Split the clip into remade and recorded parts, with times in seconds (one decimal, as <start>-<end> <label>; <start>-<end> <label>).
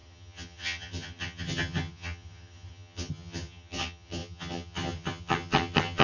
0.0-6.0 remade